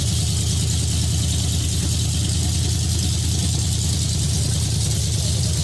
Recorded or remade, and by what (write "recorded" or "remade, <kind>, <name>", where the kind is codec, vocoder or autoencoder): recorded